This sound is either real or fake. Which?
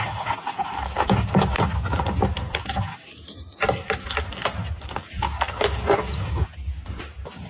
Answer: real